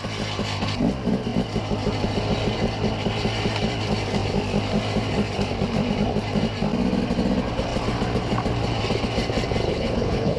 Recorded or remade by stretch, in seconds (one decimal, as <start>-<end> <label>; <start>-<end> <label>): 0.0-9.7 recorded; 9.7-10.4 remade